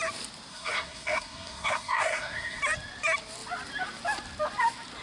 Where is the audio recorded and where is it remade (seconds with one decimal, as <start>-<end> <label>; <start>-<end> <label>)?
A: 0.0-0.5 recorded; 0.5-2.6 remade; 2.6-5.0 recorded